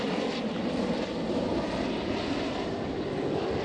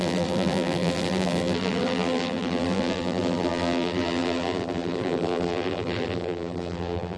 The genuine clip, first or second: first